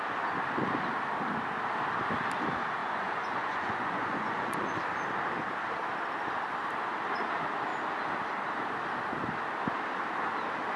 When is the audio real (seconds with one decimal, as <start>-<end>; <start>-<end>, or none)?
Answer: 0.0-2.8; 4.7-10.8

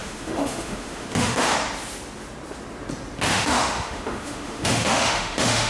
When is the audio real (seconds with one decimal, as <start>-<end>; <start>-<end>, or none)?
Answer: 1.5-3.3

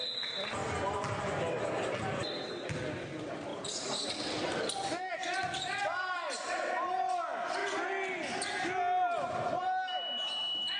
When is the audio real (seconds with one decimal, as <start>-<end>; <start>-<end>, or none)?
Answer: 0.0-10.8